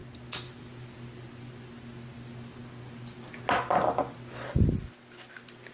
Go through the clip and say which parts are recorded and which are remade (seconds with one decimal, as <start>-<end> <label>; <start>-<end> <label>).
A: 0.0-5.7 recorded